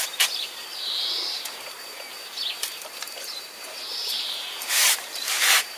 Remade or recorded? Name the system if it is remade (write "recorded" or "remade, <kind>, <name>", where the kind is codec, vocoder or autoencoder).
remade, vocoder, BigVGAN v2